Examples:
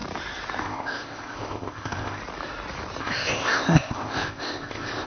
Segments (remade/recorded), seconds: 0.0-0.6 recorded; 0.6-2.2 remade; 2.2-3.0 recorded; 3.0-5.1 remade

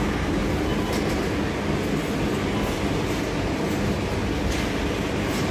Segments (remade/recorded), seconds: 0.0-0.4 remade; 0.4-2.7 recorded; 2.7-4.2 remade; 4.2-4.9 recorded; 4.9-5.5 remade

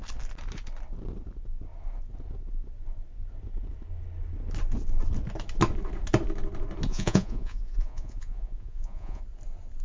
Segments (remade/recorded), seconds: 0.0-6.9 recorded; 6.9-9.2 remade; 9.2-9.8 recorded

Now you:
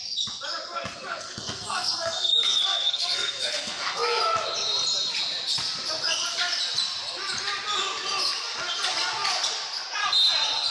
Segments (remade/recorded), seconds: 0.0-1.1 recorded; 1.1-4.2 remade; 4.2-10.7 recorded

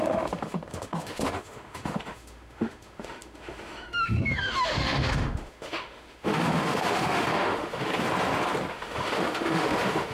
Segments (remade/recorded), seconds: 0.0-7.9 remade; 7.9-8.7 recorded; 8.7-10.1 remade